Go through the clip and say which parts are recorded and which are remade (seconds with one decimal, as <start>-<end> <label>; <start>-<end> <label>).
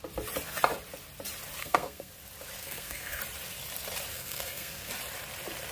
0.0-1.6 recorded; 1.6-2.1 remade; 2.1-2.6 recorded; 2.6-3.2 remade; 3.2-4.1 recorded; 4.1-4.9 remade; 4.9-5.7 recorded